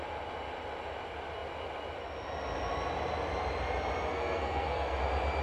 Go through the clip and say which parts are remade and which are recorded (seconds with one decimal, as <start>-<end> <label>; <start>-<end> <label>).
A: 0.0-4.1 recorded; 4.1-5.0 remade; 5.0-5.4 recorded